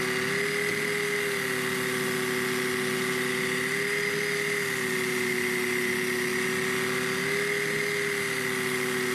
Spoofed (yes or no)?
no